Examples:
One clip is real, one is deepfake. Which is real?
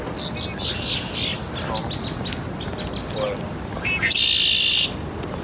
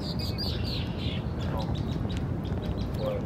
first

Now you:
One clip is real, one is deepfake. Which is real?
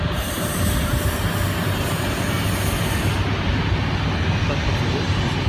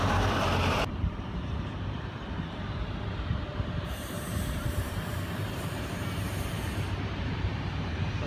first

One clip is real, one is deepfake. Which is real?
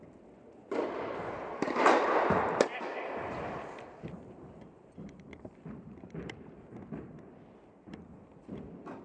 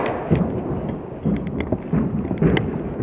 second